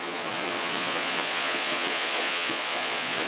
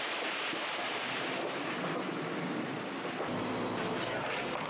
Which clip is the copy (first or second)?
first